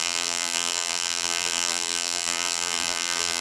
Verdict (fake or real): fake